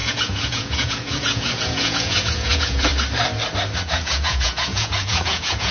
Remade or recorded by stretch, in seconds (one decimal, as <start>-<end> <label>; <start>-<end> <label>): 0.0-2.9 remade; 2.9-3.8 recorded; 3.8-5.7 remade